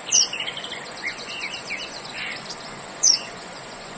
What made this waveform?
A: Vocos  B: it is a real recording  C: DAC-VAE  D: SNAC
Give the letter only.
A